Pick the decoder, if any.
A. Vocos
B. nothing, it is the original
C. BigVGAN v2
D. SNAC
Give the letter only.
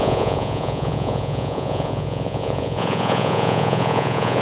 A